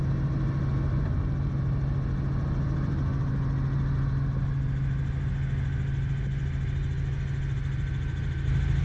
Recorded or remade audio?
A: recorded